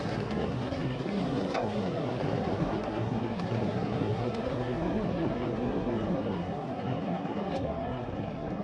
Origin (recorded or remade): remade